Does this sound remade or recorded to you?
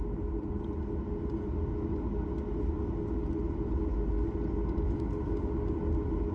recorded